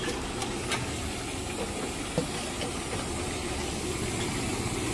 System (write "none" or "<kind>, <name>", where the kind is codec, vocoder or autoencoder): none